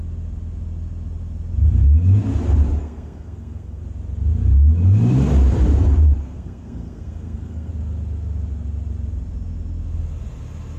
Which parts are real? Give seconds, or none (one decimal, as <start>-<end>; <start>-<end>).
0.0-2.8; 3.8-6.2; 7.7-10.8